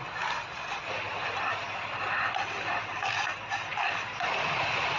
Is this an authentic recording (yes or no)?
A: yes